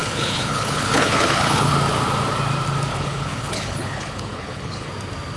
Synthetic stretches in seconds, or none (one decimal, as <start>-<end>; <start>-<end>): 0.0-1.7; 2.9-4.9